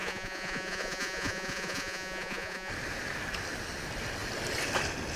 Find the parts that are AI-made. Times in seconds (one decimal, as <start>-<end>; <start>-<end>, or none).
0.0-2.7